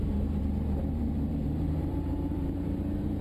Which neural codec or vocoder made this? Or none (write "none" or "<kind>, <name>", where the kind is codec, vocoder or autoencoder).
vocoder, BigVGAN v2